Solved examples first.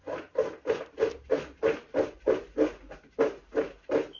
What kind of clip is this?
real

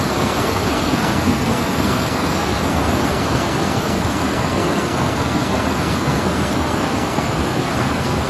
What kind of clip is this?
fake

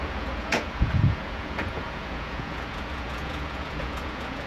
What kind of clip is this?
fake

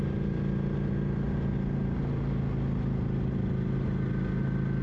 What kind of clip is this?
real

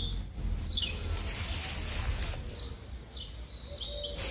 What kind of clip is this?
real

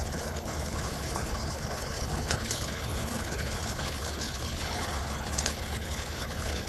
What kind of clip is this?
fake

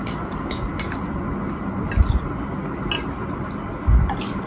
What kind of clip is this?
real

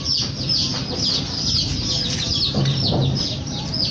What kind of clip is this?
real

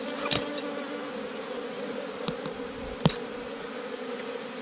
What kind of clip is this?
real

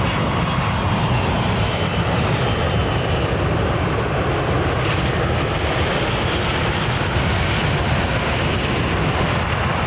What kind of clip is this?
real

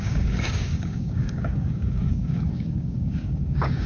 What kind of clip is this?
fake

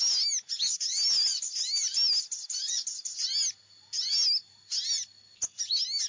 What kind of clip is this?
real